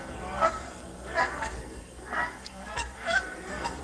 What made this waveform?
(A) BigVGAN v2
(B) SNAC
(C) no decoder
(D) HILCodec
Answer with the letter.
B